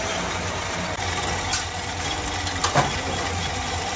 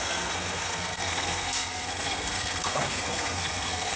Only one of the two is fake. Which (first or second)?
second